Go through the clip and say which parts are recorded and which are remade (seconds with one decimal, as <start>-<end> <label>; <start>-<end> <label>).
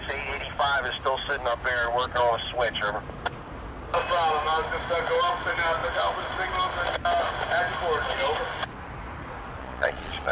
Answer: 0.0-9.6 recorded; 9.6-10.3 remade